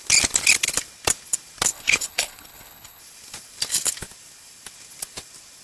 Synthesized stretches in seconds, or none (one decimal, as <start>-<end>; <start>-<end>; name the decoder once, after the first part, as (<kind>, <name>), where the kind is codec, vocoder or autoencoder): 1.7-3.0 (codec, HILCodec)

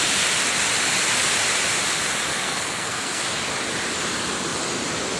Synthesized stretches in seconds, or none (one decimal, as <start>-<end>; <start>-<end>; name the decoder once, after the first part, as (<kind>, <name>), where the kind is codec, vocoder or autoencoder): 2.3-3.2 (codec, SNAC)